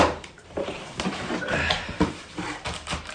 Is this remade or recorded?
remade